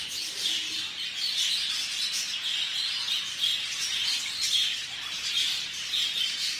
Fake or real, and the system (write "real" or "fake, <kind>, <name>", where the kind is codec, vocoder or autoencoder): real